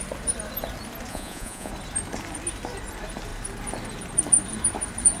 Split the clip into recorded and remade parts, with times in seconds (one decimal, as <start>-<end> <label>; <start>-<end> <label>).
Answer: 0.0-1.1 recorded; 1.1-1.7 remade; 1.7-5.2 recorded